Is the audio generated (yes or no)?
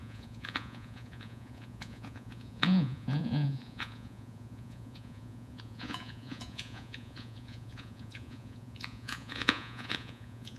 yes